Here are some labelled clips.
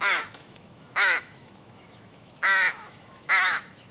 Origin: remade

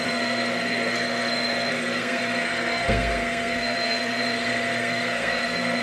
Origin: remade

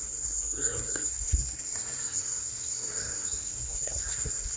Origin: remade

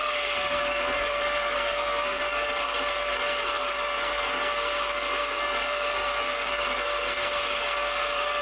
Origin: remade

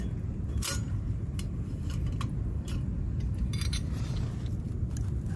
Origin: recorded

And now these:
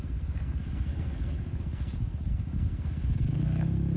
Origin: remade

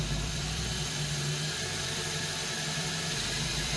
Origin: remade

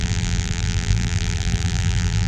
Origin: remade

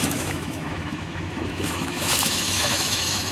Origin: remade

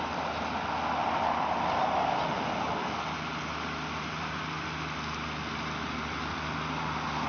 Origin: recorded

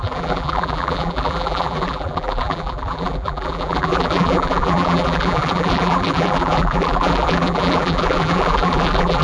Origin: remade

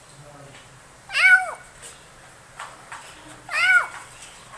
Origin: recorded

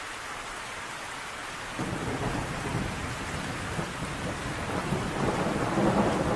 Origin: recorded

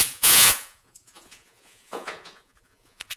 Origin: remade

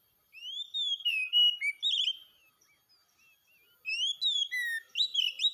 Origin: recorded